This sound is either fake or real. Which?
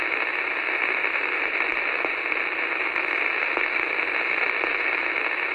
real